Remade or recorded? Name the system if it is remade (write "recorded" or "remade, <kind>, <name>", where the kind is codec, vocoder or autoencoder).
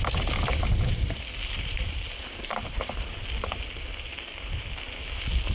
recorded